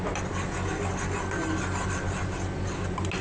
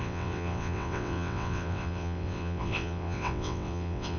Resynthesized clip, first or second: second